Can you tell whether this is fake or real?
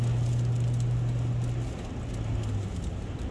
real